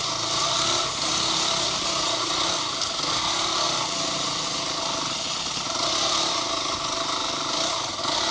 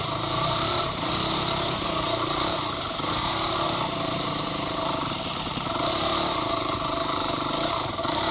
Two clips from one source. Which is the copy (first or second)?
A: second